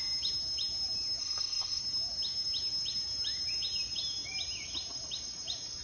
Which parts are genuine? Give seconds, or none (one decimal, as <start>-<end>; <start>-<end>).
0.0-1.2; 1.8-5.8